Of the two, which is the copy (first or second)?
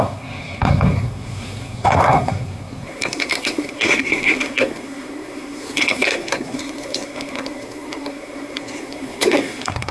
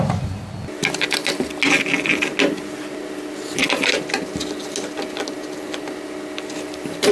first